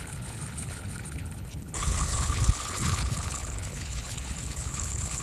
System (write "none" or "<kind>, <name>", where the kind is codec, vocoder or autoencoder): codec, HILCodec